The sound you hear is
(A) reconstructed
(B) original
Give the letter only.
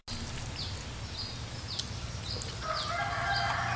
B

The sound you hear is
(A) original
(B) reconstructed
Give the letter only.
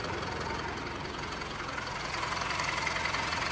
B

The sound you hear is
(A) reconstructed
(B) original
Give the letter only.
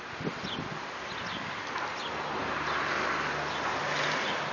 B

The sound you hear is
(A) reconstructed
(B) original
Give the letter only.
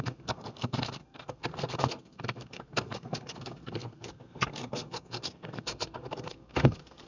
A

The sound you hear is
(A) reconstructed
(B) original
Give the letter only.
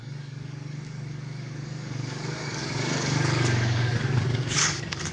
A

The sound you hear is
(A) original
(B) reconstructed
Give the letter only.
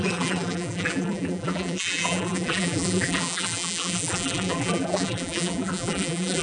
B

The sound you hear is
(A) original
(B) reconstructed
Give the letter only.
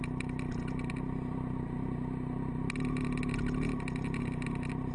A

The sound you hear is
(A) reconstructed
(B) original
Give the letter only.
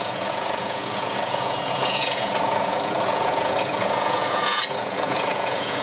A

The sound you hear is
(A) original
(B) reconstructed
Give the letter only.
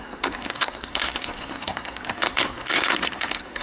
B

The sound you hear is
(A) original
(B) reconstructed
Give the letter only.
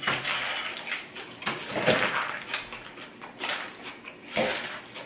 A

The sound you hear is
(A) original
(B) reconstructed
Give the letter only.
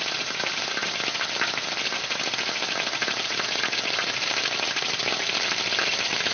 A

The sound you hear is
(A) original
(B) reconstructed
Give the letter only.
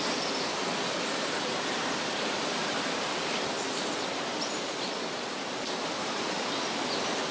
A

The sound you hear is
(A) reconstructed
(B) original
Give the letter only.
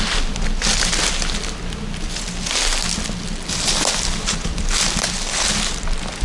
B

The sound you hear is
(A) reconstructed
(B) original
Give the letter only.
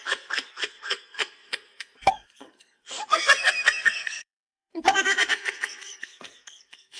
A